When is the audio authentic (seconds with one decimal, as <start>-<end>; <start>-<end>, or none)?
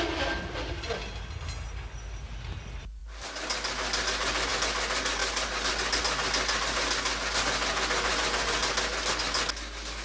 0.0-10.0